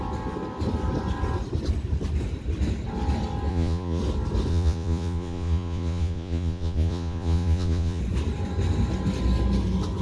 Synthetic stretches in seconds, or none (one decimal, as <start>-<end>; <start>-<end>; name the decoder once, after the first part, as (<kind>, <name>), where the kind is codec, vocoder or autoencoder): 3.5-4.0 (vocoder, Vocos); 4.5-8.0